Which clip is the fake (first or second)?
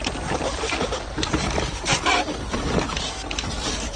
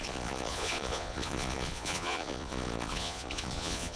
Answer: second